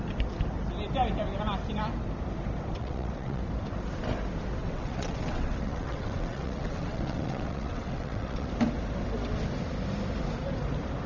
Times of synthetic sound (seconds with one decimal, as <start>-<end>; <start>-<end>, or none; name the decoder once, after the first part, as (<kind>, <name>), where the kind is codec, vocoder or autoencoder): 2.8-3.4 (vocoder, WaveNeXt); 4.6-8.5